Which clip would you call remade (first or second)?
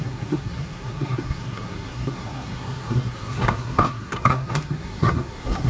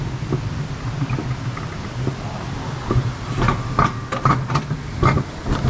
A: first